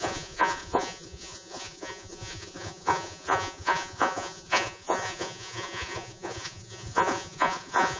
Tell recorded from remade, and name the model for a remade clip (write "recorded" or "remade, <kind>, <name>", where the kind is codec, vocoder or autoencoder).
remade, vocoder, Vocos